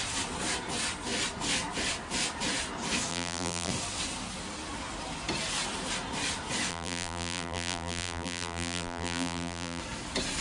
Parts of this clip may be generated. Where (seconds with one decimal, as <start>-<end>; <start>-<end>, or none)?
3.1-3.7; 6.7-9.8